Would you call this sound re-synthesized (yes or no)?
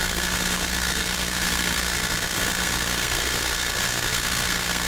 yes